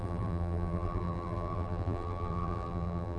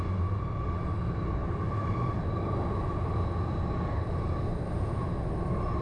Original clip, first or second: second